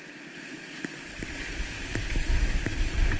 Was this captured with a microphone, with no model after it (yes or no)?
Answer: yes